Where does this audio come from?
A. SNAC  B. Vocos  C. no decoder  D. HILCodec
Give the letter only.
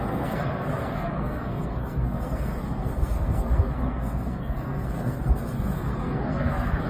A